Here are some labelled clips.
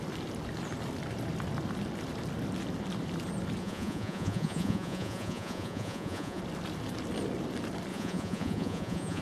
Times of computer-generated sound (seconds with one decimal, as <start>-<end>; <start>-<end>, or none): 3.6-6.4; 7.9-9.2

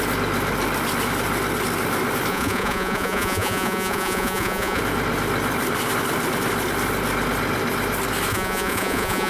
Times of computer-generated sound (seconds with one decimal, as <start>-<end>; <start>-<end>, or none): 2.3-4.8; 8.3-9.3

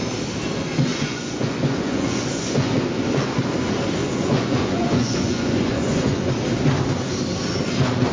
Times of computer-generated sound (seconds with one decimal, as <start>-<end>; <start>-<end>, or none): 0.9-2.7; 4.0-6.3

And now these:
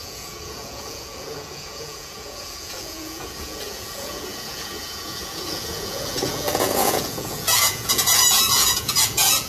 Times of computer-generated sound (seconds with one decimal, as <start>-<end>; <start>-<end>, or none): 0.0-9.5